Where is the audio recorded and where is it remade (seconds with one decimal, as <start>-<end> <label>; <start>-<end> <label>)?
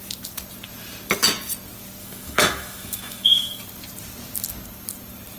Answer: 0.0-2.0 recorded; 2.0-3.6 remade; 3.6-5.4 recorded